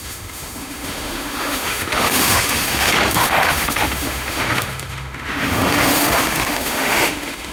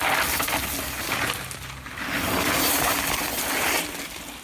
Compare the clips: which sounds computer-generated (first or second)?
first